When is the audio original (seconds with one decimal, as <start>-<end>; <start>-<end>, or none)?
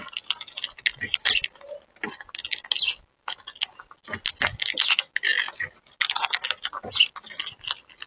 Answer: 0.0-8.1